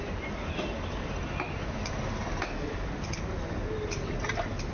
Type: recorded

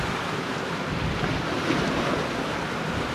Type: recorded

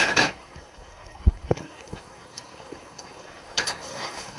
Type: remade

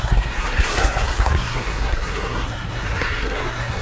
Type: remade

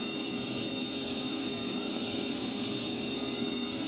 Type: remade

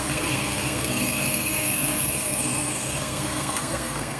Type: remade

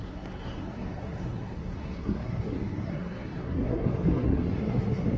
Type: remade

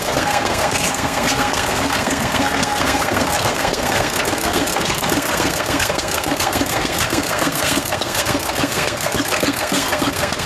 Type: remade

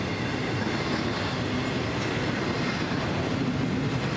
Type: recorded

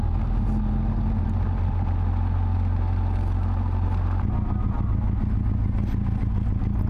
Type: recorded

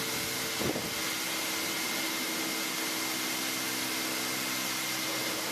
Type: recorded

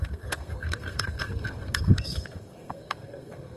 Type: remade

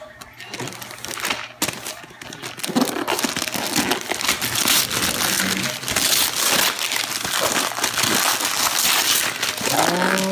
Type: recorded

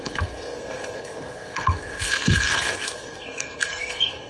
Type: remade